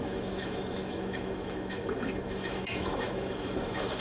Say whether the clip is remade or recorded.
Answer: remade